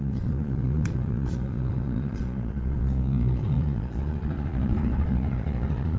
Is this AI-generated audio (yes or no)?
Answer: yes